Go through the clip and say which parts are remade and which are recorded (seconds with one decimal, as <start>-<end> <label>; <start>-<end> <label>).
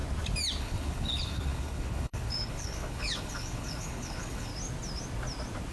0.0-0.6 recorded; 0.6-4.5 remade; 4.5-5.7 recorded